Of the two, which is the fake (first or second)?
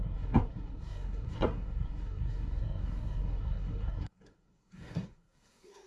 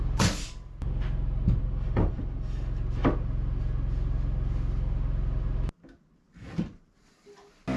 first